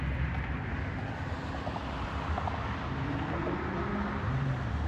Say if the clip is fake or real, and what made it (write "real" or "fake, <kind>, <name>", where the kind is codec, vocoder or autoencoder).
real